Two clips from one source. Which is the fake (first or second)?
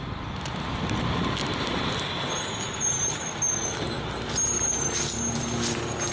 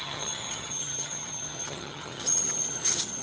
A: second